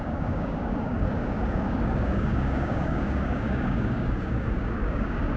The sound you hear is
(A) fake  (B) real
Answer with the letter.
A